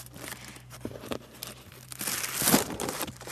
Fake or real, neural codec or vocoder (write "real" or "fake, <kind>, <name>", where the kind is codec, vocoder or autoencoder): real